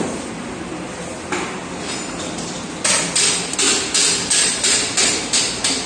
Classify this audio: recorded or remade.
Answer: recorded